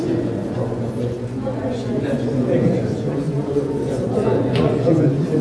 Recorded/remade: remade